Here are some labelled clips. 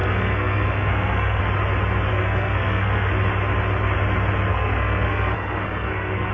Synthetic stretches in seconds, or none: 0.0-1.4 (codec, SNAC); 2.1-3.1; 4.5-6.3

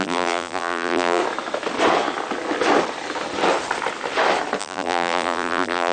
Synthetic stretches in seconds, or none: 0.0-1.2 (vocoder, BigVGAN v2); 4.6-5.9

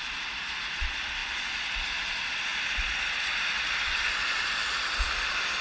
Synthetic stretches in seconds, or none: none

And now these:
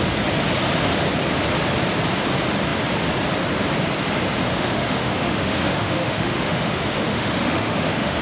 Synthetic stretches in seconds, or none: 4.4-8.2 (autoencoder, DAC-VAE)

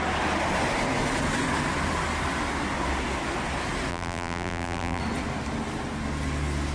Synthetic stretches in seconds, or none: 3.9-5.0 (vocoder, BigVGAN v2)

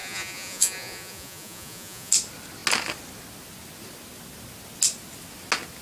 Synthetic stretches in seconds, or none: 0.0-2.1 (vocoder, Vocos)